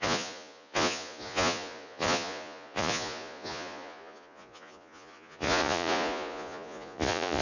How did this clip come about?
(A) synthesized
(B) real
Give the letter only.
A